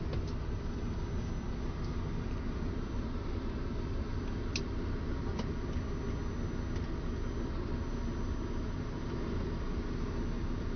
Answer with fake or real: real